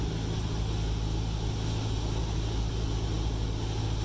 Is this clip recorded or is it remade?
recorded